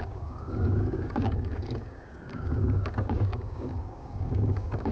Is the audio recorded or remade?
remade